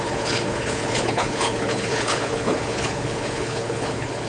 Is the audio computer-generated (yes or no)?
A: yes